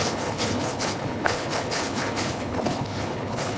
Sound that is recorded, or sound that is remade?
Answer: remade